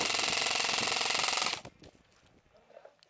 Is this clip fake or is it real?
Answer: real